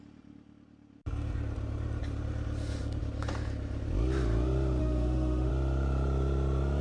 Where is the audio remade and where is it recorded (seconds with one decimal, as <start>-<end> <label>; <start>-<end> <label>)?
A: 0.0-4.8 recorded; 4.8-5.5 remade; 5.5-6.8 recorded